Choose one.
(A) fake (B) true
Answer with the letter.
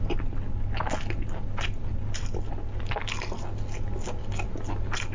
B